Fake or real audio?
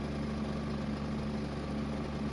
real